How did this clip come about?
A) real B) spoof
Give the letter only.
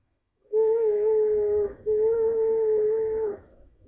B